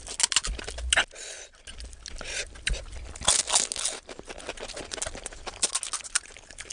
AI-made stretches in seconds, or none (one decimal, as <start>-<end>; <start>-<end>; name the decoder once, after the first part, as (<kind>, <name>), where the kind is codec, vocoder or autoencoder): none